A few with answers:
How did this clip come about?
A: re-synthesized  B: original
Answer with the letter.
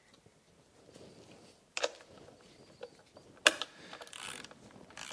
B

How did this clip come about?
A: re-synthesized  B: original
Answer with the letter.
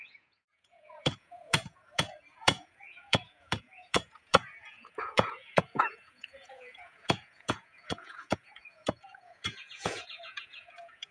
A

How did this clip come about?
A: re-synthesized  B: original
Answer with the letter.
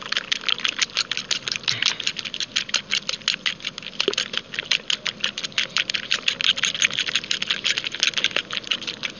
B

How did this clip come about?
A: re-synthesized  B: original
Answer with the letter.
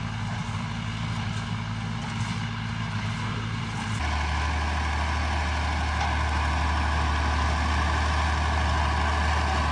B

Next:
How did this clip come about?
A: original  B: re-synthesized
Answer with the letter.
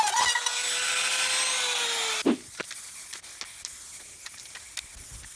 A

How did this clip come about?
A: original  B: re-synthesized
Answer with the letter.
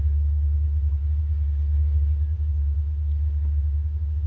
A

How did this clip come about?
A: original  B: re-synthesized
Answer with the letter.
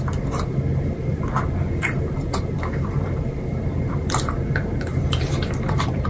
B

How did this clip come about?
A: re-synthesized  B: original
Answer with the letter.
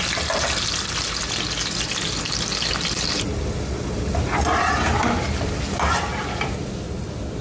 B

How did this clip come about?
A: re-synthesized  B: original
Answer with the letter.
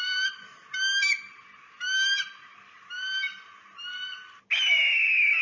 B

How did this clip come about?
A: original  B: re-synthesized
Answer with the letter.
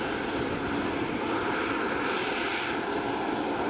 A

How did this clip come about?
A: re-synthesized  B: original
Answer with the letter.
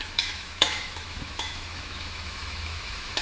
A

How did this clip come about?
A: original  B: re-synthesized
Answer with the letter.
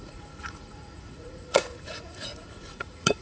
B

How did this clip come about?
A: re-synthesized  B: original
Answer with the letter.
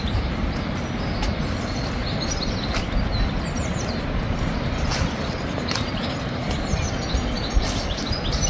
B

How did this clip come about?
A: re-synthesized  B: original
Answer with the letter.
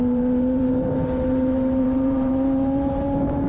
A